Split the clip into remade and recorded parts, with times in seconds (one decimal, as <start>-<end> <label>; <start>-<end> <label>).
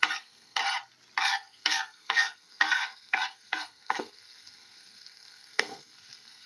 0.0-0.6 remade; 0.6-1.2 recorded; 1.2-6.5 remade